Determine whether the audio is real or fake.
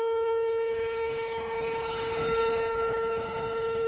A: fake